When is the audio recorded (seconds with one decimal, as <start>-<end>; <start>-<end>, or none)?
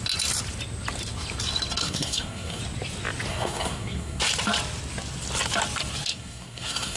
0.0-1.8; 2.6-3.3; 4.2-6.1